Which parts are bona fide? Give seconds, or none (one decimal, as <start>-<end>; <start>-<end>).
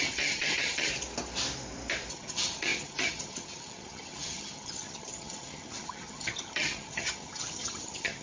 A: 0.9-2.1